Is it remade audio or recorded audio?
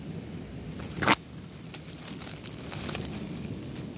recorded